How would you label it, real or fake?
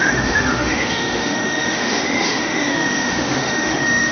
fake